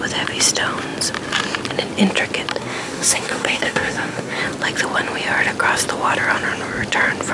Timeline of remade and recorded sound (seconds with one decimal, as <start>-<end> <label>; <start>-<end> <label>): 0.0-2.5 recorded; 2.5-4.4 remade; 4.4-7.3 recorded